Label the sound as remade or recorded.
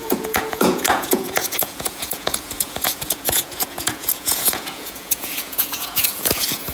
remade